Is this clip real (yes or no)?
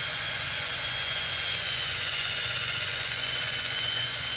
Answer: no